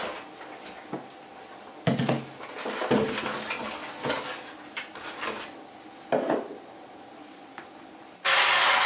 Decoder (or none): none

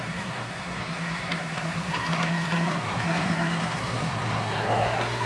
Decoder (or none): codec, SNAC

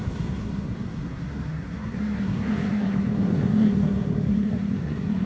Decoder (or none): codec, SNAC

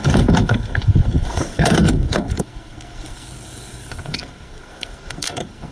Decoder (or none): codec, SNAC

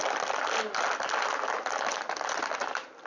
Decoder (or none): none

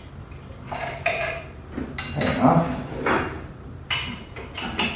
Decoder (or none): none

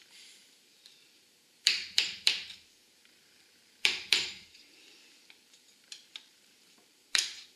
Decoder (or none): vocoder, BigVGAN v2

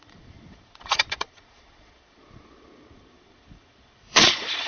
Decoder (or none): vocoder, Vocos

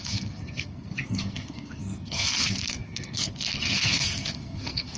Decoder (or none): codec, SNAC